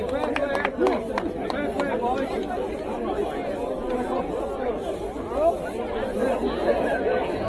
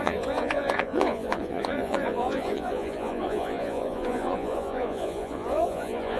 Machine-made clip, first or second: second